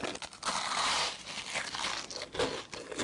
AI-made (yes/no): no